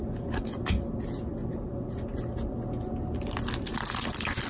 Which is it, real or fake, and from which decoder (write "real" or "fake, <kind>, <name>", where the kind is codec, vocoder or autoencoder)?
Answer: real